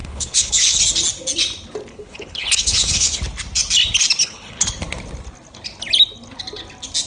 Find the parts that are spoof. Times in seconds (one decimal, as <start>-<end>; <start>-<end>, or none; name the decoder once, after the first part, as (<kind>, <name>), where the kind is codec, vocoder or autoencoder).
0.0-0.8 (codec, HILCodec); 1.9-3.2; 4.2-4.7